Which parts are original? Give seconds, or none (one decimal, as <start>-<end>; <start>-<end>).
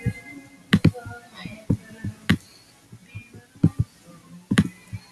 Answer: 0.0-5.1